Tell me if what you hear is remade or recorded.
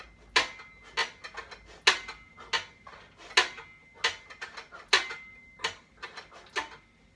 recorded